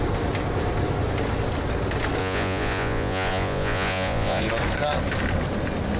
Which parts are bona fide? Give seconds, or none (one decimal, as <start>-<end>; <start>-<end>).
0.0-2.2; 4.4-6.0